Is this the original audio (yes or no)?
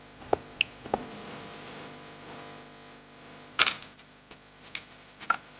yes